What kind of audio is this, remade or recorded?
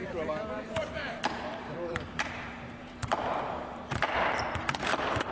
remade